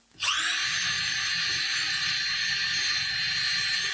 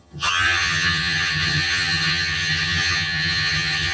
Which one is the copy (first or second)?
second